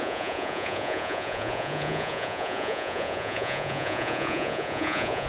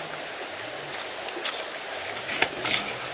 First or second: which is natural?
second